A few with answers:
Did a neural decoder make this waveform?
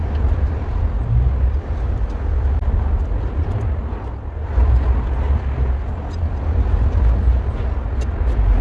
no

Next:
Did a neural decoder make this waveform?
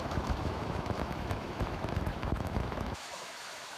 yes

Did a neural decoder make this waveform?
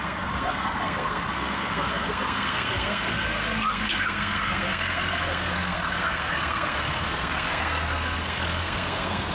yes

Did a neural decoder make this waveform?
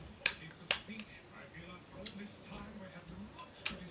no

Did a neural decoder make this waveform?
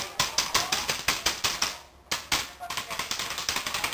no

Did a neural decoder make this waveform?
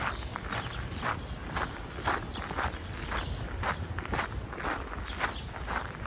no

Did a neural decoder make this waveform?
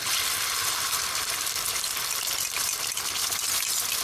yes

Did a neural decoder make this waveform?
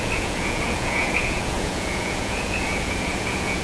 yes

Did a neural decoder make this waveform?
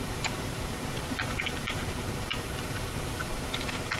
yes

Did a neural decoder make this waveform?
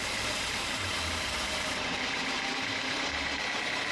yes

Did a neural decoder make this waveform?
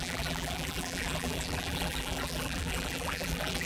yes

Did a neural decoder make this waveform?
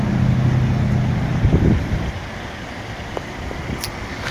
no